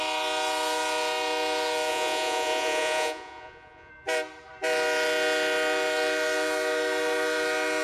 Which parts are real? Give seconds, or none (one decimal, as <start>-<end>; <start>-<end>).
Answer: 0.0-1.9; 3.9-7.8